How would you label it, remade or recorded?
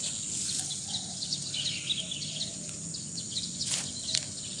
recorded